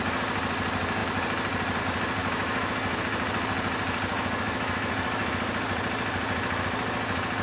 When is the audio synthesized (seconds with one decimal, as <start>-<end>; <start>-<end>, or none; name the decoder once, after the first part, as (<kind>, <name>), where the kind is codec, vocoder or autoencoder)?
2.2-3.0 (autoencoder, DAC-VAE); 4.1-5.3